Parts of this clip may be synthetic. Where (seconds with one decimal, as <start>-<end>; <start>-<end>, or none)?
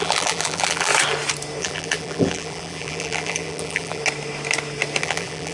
0.0-0.9; 1.6-4.0; 5.0-5.5